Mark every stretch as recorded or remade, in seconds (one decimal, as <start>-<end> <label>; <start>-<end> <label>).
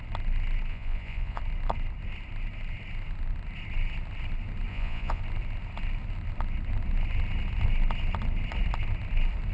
0.0-0.7 recorded; 0.7-1.4 remade; 1.4-4.7 recorded; 4.7-5.2 remade; 5.2-9.5 recorded